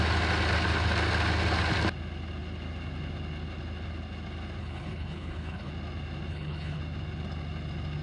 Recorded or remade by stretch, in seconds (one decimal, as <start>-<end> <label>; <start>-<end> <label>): 0.0-4.6 recorded; 4.6-5.7 remade; 5.7-6.3 recorded; 6.3-6.8 remade; 6.8-8.0 recorded

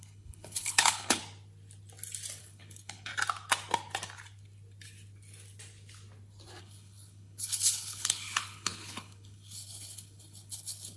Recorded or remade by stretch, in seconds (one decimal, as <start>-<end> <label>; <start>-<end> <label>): 0.0-1.2 remade; 1.2-2.4 recorded; 2.4-3.1 remade; 3.1-6.6 recorded; 6.6-11.0 remade

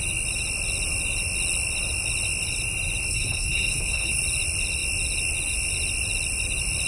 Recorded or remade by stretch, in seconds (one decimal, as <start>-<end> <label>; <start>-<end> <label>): 0.0-3.1 recorded; 3.1-4.2 remade; 4.2-6.9 recorded

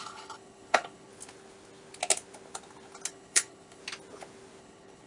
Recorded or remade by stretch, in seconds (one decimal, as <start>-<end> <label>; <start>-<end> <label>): 0.0-1.1 remade; 1.1-3.1 recorded; 3.1-3.8 remade; 3.8-4.6 recorded; 4.6-5.1 remade

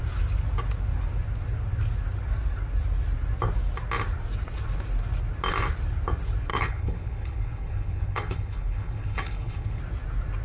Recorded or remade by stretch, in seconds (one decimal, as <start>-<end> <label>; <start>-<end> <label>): 0.0-6.5 recorded; 6.5-9.8 remade; 9.8-10.4 recorded